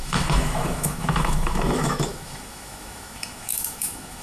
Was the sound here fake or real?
fake